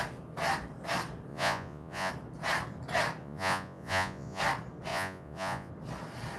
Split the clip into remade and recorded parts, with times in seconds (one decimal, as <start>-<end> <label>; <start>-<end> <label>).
0.0-1.3 recorded; 1.3-2.1 remade; 2.1-3.2 recorded; 3.2-4.4 remade; 4.4-4.9 recorded; 4.9-5.7 remade; 5.7-6.4 recorded